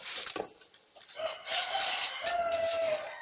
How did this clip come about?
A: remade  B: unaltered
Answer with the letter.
B